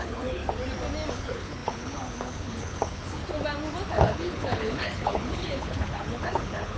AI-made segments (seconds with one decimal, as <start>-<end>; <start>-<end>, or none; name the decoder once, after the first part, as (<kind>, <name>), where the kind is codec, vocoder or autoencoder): 0.0-0.4 (codec, HILCodec); 1.1-3.2; 3.9-6.8